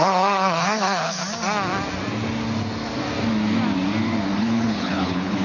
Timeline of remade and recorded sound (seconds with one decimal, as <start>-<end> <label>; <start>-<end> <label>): 0.0-1.2 remade; 1.2-4.4 recorded; 4.4-5.4 remade